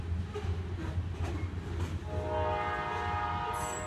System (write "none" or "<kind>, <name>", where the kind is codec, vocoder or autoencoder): none